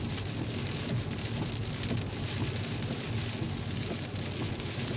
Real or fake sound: real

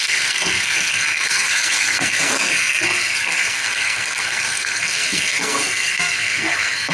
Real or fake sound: fake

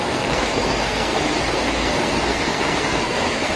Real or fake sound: fake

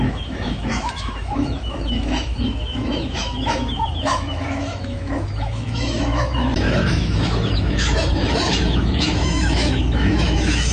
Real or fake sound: fake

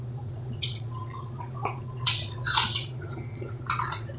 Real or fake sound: fake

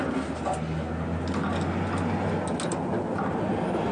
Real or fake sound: real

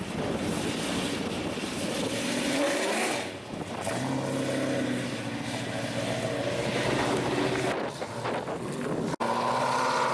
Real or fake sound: real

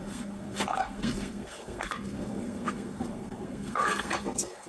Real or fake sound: fake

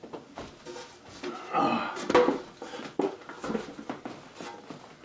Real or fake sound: real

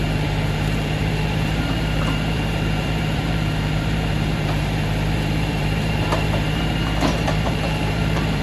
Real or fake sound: fake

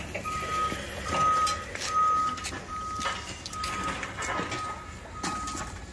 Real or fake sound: real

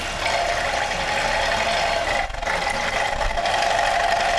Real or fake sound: real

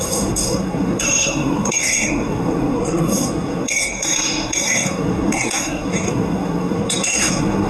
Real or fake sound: fake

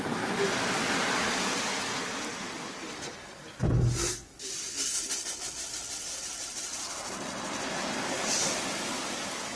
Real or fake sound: real